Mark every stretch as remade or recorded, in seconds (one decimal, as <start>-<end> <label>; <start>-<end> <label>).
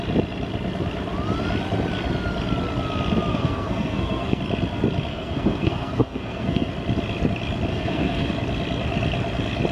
0.0-3.3 recorded; 3.3-4.4 remade; 4.4-5.1 recorded; 5.1-6.7 remade; 6.7-7.7 recorded; 7.7-8.3 remade; 8.3-9.7 recorded